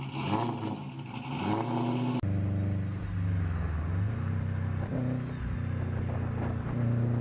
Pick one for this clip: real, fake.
real